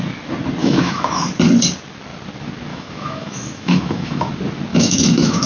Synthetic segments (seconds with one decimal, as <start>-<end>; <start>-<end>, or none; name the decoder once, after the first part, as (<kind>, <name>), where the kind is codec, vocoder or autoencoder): 0.6-1.3 (autoencoder, DAC-VAE); 2.7-4.3; 4.7-5.5